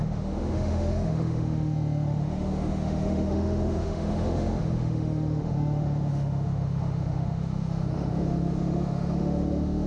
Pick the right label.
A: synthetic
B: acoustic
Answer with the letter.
A